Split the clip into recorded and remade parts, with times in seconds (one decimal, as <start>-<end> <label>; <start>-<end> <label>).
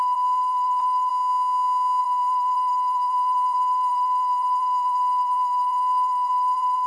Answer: 0.0-1.1 remade; 1.1-2.0 recorded; 2.0-6.9 remade